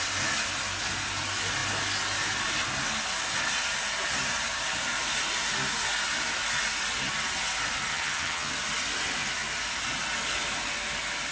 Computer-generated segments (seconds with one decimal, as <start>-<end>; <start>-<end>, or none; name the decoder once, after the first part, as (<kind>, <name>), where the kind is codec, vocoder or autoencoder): 7.9-8.5 (vocoder, HiFi-GAN)